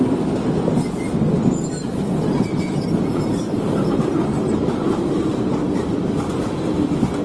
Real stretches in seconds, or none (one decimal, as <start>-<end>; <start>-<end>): 0.0-3.1; 6.1-7.2